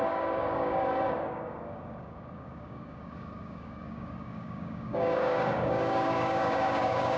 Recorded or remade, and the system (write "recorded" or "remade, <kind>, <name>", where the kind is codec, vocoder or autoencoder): remade, codec, DAC